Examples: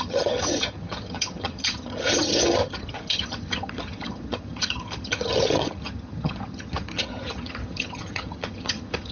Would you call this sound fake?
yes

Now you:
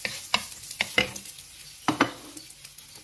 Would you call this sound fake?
no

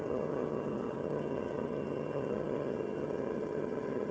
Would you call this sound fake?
yes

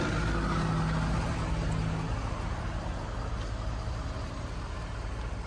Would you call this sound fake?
no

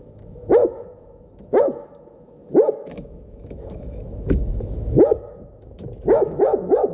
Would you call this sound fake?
yes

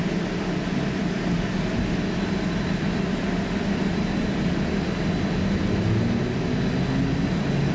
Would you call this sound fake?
no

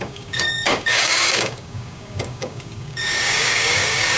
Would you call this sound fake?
yes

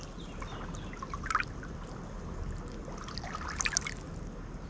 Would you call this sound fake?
no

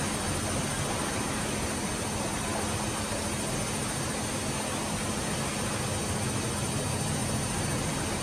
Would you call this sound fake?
no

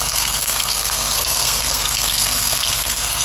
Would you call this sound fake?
yes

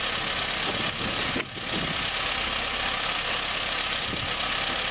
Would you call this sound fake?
no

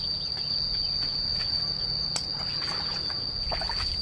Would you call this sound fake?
no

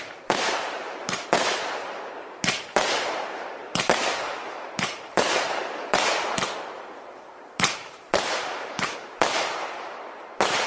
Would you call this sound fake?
yes